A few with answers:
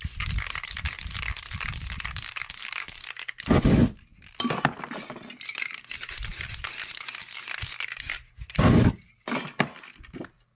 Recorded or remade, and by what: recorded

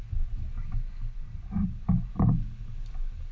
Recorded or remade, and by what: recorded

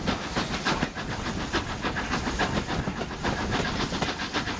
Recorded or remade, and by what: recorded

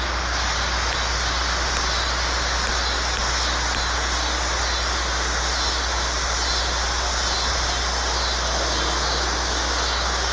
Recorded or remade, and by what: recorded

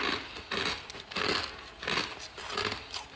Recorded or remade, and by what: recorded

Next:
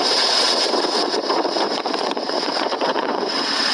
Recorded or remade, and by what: remade, vocoder, WaveNeXt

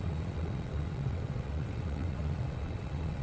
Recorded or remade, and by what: remade, vocoder, WaveNeXt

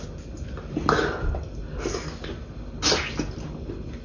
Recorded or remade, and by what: recorded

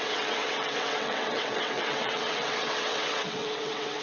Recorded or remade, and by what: remade, vocoder, WaveNeXt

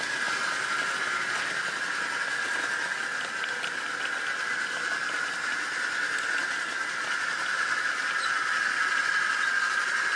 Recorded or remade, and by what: recorded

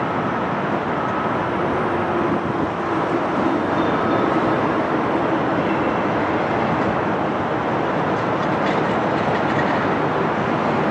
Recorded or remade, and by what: recorded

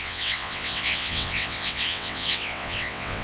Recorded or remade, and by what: remade, vocoder, WaveNeXt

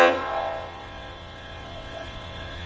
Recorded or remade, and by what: remade, vocoder, WaveNeXt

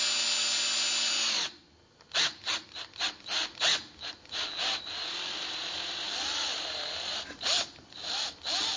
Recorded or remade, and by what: recorded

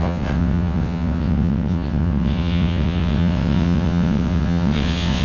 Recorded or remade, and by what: remade, vocoder, WaveNeXt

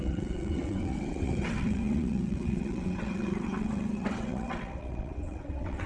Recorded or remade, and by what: remade, vocoder, WaveNeXt